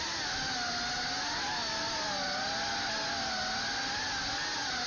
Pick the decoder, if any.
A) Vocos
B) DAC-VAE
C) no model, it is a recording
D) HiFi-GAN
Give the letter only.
C